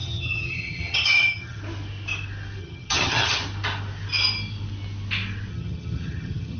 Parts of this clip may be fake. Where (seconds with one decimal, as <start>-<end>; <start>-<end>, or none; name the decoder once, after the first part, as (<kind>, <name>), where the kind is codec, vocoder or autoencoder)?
0.0-1.6 (vocoder, HiFi-GAN); 2.6-3.4; 5.5-6.6